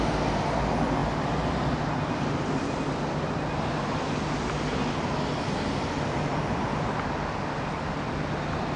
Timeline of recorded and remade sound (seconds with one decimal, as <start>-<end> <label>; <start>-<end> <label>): 0.0-8.8 recorded